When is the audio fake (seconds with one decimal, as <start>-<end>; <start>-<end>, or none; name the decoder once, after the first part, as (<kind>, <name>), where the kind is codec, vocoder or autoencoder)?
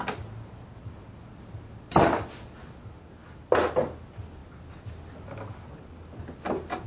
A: none